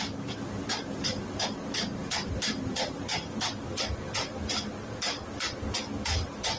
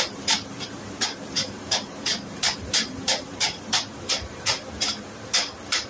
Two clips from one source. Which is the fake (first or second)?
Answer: second